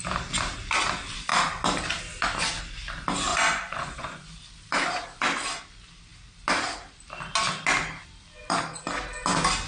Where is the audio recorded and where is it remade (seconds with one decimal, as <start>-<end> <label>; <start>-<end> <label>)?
0.0-3.3 recorded; 3.3-4.4 remade; 4.4-9.7 recorded